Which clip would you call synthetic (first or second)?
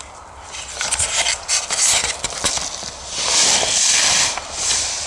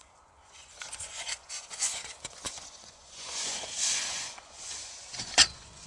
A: second